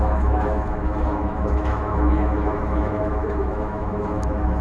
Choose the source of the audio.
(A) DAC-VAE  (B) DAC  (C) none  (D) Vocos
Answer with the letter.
A